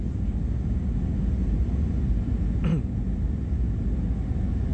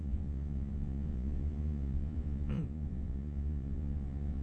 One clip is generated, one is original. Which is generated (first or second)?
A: second